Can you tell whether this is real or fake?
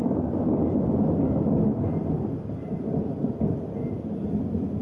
real